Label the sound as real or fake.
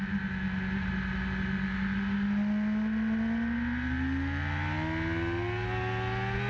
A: real